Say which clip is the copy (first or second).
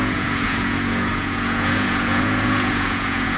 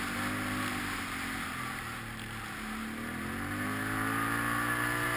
first